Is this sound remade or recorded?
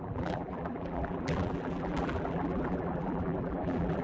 remade